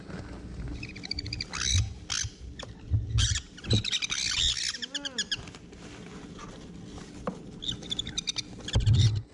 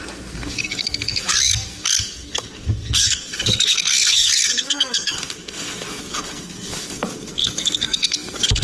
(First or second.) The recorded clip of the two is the first